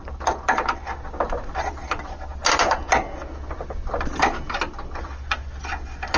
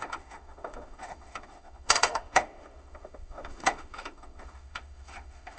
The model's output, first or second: second